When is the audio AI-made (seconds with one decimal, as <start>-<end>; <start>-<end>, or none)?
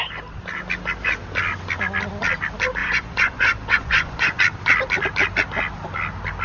2.8-4.4